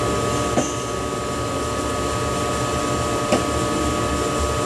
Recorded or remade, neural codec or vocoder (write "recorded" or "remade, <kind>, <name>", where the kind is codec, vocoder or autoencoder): recorded